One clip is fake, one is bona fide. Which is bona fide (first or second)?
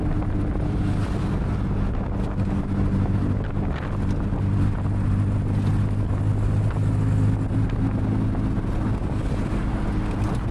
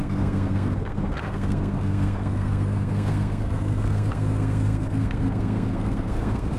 first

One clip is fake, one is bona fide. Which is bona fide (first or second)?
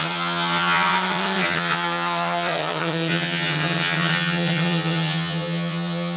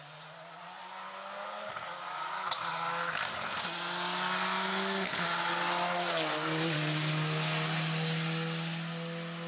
second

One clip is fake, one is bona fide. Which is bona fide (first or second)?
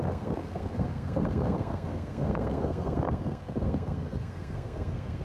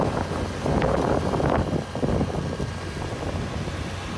second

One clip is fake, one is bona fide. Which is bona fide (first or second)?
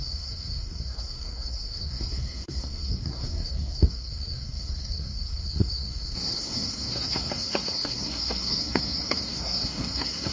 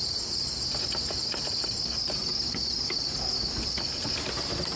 second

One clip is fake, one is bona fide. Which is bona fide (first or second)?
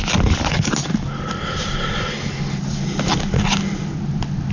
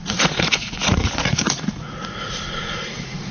first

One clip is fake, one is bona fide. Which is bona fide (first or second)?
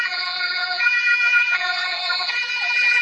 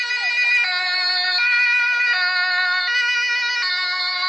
second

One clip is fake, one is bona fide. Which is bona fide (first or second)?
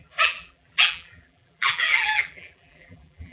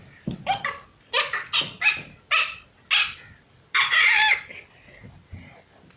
second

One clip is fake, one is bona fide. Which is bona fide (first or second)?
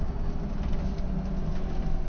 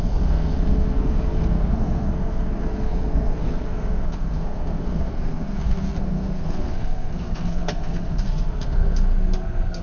first